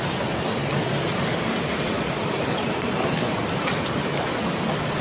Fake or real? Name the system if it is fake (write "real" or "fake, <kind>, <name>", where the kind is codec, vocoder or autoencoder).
real